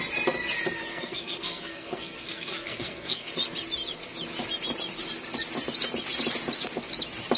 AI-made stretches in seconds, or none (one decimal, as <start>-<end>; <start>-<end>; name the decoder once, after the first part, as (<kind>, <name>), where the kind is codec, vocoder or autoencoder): 0.9-3.3 (codec, SNAC)